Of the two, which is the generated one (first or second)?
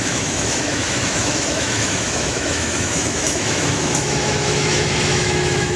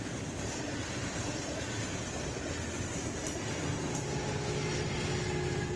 first